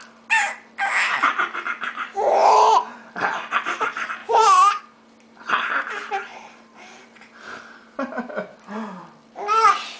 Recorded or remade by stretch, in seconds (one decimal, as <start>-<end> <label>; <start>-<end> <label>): 0.0-4.2 recorded; 4.2-4.8 remade; 4.8-6.3 recorded; 6.3-8.1 remade; 8.1-8.5 recorded; 8.5-9.0 remade; 9.0-10.0 recorded